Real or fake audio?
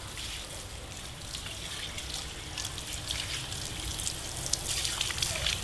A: real